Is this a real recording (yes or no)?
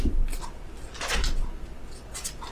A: yes